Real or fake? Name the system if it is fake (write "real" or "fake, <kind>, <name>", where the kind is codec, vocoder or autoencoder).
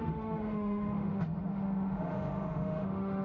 fake, autoencoder, DAC-VAE